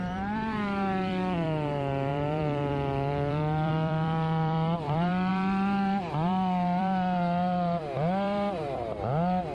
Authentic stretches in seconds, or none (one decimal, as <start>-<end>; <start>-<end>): none